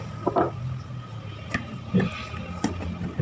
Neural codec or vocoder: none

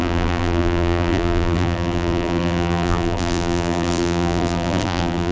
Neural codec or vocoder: vocoder, BigVGAN v2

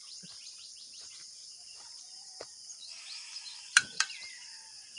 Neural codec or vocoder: vocoder, BigVGAN v2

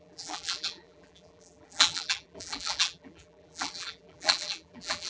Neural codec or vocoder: vocoder, BigVGAN v2